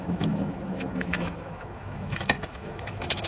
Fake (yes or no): yes